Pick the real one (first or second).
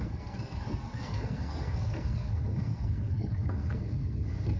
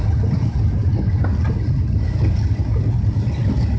second